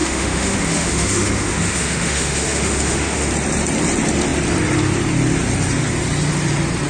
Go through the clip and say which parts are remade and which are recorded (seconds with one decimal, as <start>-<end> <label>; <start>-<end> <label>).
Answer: 0.0-3.3 remade; 3.3-6.9 recorded